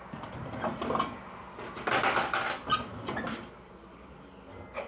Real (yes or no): yes